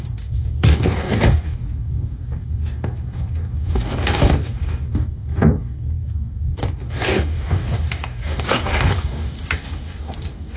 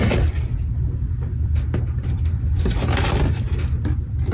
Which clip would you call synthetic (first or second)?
first